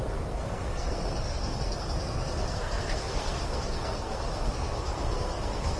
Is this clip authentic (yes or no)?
no